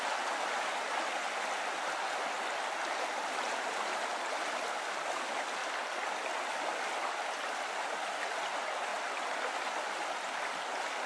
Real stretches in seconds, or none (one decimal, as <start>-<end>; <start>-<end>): 0.0-11.1